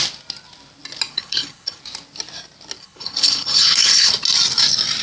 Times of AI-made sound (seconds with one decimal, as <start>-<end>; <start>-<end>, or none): 1.1-1.8; 2.8-4.1